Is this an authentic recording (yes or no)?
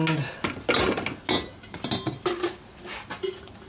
yes